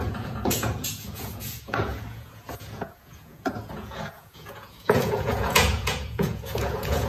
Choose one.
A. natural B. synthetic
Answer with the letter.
B